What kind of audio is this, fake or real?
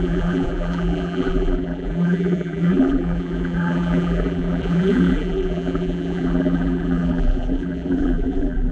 fake